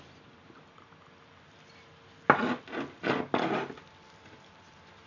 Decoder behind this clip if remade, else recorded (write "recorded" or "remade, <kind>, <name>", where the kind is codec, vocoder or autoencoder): recorded